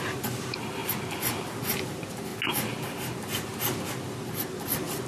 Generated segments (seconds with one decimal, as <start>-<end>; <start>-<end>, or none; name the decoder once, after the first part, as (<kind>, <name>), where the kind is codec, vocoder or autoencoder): 0.0-0.8 (vocoder, BigVGAN v2); 1.7-2.3; 2.8-3.5